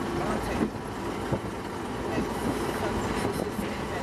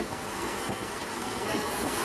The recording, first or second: first